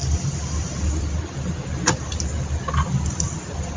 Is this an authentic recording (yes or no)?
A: yes